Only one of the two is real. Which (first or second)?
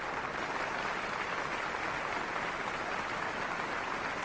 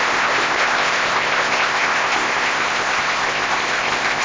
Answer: first